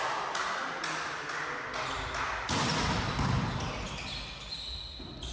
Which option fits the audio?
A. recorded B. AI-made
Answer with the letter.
A